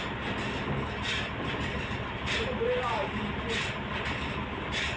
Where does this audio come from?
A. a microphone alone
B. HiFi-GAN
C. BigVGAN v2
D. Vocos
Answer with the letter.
A